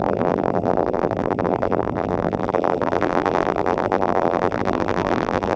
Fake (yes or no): yes